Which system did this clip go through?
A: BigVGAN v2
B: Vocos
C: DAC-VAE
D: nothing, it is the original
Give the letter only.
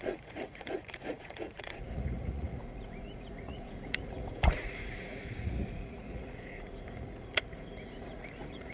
B